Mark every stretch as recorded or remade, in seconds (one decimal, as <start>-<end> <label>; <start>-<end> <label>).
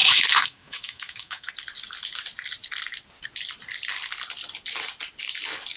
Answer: 0.0-1.5 remade; 1.5-5.8 recorded